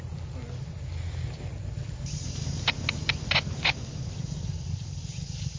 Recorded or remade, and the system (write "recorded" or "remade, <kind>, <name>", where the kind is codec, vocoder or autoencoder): recorded